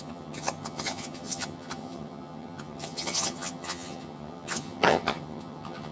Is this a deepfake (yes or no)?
yes